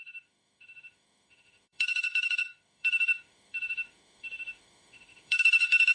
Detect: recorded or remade remade